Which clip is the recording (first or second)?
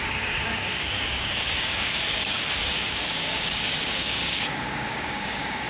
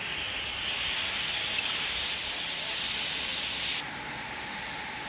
second